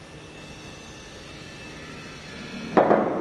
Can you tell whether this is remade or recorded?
recorded